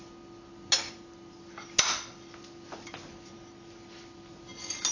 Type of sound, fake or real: real